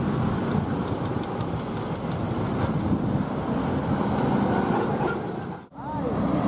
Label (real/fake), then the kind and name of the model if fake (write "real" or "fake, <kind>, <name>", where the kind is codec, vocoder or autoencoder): real